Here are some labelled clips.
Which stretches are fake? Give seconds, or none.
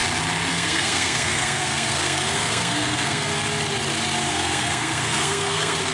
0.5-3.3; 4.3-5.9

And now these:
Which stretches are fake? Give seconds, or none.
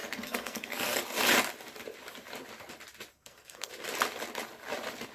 0.0-1.0; 3.1-3.7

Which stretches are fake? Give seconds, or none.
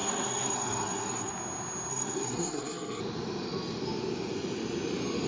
0.0-1.3; 1.9-3.0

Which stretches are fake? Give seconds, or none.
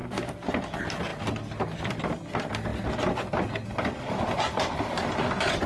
none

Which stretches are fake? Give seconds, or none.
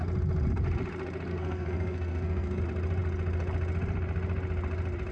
1.3-2.6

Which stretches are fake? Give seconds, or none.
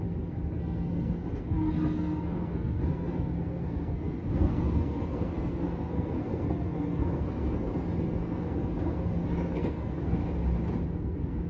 0.0-10.2; 10.9-11.5